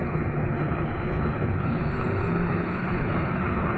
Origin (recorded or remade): remade